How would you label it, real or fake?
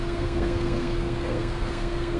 fake